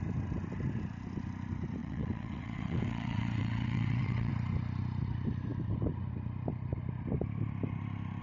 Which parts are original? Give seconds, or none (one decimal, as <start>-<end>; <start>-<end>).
0.0-1.8; 4.3-8.2